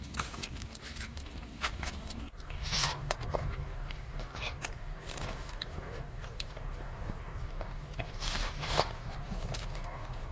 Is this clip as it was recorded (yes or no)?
no